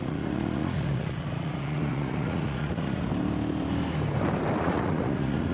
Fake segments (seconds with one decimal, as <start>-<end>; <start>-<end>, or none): 0.0-3.1; 4.6-5.5